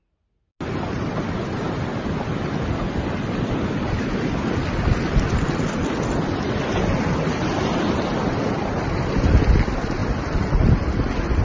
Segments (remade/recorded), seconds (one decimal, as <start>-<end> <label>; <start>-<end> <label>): 0.0-11.4 recorded